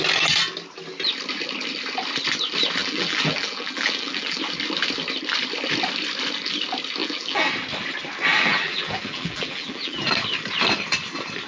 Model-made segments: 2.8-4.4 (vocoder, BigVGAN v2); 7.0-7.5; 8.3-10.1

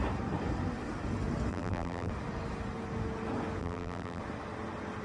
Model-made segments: 1.5-2.1 (vocoder, BigVGAN v2); 3.6-4.2

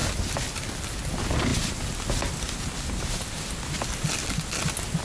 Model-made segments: none

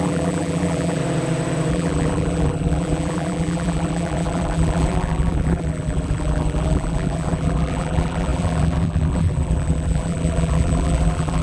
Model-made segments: 0.0-1.0 (vocoder, BigVGAN v2); 1.7-11.4

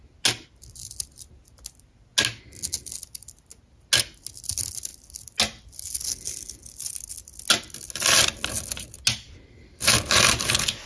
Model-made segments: none

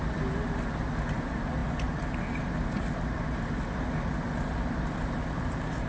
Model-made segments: none

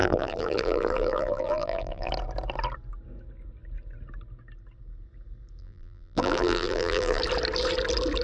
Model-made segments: 0.0-2.1 (vocoder, BigVGAN v2); 5.6-7.2

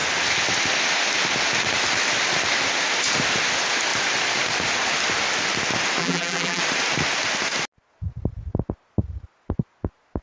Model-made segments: 6.0-6.6 (vocoder, BigVGAN v2)